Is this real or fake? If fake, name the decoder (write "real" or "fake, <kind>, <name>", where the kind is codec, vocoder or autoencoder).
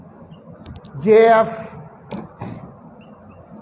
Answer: real